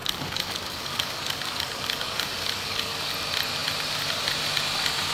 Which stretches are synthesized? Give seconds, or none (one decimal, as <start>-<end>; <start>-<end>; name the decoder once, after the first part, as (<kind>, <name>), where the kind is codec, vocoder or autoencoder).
0.0-3.1 (codec, DAC)